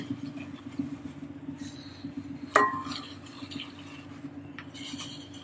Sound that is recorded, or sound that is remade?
recorded